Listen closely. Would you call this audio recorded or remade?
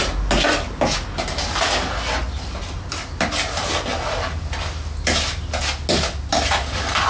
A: recorded